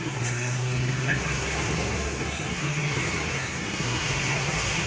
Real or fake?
fake